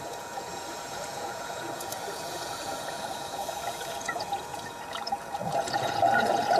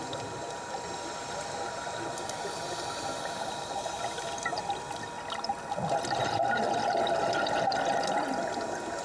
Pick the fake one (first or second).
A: first